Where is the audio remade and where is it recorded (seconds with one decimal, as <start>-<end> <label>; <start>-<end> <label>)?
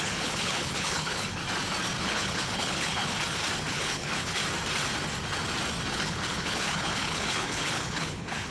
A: 0.0-1.4 remade; 1.4-2.0 recorded; 2.0-3.0 remade; 3.0-3.7 recorded; 3.7-4.4 remade; 4.4-5.9 recorded; 5.9-8.5 remade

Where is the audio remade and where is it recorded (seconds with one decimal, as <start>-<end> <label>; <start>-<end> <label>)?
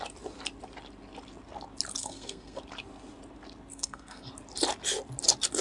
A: 0.0-2.0 recorded; 2.0-2.6 remade; 2.6-3.7 recorded; 3.7-4.3 remade; 4.3-5.6 recorded